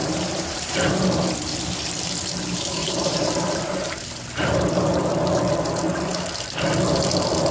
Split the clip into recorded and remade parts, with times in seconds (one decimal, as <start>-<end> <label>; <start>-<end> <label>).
0.0-0.9 remade; 0.9-2.8 recorded; 2.8-4.5 remade; 4.5-7.5 recorded